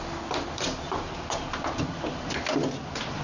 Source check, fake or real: real